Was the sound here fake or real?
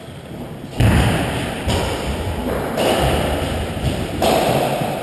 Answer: real